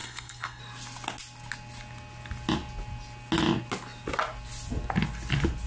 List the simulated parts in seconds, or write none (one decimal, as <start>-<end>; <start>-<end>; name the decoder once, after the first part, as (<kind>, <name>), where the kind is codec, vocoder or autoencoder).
0.0-0.6 (codec, SNAC)